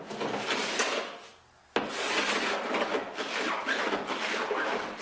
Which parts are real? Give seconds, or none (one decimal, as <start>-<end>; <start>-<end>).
0.0-5.0